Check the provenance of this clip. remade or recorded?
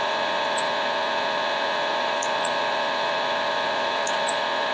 remade